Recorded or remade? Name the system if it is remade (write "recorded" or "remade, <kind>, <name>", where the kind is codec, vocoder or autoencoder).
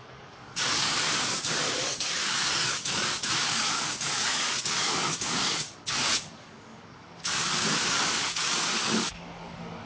remade, codec, DAC